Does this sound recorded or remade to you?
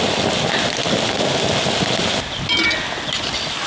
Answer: recorded